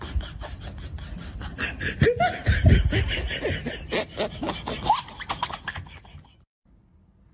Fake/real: real